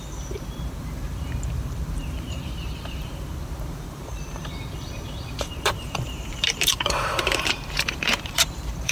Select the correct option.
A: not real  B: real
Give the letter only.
A